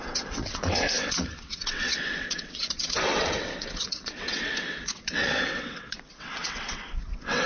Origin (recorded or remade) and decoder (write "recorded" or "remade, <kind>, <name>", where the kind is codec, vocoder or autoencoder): remade, vocoder, WaveNeXt